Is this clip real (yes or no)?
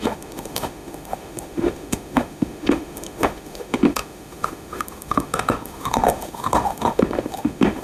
no